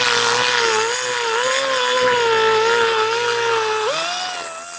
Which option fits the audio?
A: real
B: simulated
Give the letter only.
A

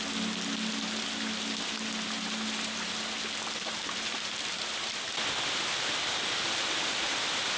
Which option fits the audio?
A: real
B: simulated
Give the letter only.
A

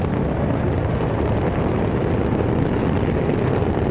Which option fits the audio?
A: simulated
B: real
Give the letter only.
B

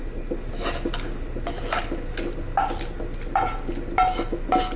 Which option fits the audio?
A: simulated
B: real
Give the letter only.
B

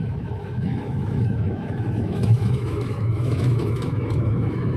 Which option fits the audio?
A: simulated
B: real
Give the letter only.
A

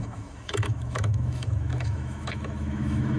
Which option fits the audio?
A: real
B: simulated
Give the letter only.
B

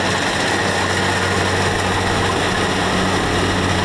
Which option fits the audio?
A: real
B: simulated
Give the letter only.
A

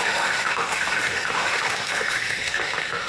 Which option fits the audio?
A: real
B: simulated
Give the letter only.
B